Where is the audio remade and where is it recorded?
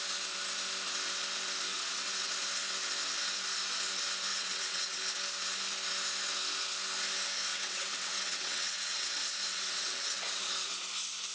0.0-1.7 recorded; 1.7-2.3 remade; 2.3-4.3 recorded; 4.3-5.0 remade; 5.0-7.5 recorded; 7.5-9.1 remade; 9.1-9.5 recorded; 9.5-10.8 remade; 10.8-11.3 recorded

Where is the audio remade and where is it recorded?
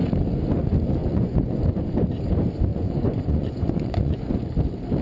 0.0-1.0 recorded; 1.0-1.6 remade; 1.6-2.7 recorded; 2.7-4.2 remade; 4.2-5.0 recorded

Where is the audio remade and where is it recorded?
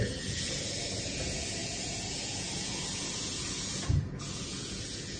0.0-5.2 remade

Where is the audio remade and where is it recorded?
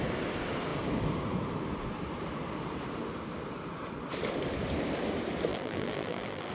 0.0-5.5 recorded; 5.5-6.5 remade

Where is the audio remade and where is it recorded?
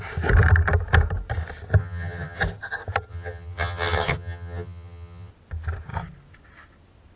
0.0-1.8 recorded; 1.8-2.4 remade; 2.4-3.1 recorded; 3.1-5.3 remade; 5.3-7.2 recorded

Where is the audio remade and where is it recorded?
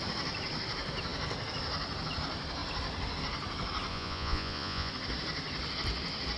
0.0-3.9 recorded; 3.9-4.9 remade; 4.9-6.4 recorded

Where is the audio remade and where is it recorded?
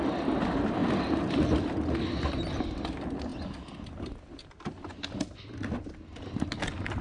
0.0-7.0 recorded